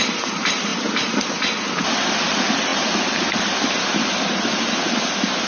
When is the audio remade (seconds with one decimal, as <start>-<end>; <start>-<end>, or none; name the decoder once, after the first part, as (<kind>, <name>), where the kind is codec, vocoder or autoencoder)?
0.7-1.3 (vocoder, BigVGAN v2); 2.7-5.0